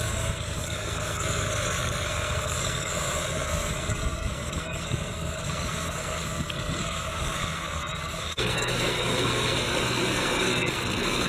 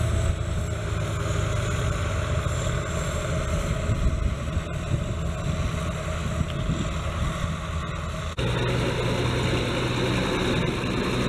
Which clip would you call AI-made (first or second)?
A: first